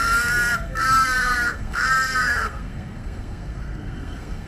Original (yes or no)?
no